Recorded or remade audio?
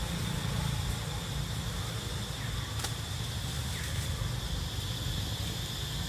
recorded